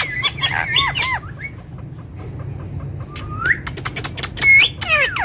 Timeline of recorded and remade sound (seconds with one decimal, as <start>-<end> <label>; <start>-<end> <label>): 0.0-5.2 recorded